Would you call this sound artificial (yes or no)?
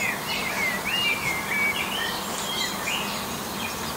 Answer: no